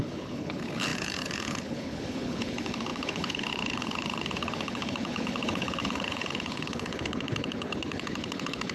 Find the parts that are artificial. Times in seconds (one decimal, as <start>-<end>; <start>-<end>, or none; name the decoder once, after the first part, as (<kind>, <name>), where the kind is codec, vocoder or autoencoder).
0.0-8.7 (codec, HILCodec)